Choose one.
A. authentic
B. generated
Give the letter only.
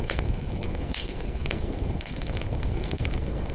B